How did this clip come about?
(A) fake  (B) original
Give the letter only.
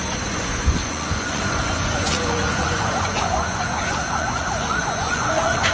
A